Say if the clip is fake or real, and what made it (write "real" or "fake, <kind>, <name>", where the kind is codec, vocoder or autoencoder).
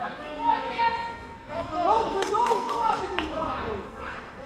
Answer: fake, codec, SNAC